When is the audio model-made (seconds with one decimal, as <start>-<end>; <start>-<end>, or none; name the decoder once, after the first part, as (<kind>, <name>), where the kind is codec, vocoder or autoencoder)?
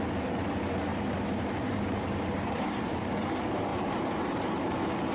0.9-2.9 (vocoder, BigVGAN v2); 3.7-4.4